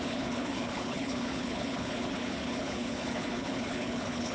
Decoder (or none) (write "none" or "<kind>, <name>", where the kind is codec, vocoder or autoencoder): codec, HILCodec